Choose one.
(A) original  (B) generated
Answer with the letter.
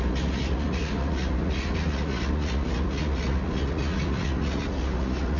B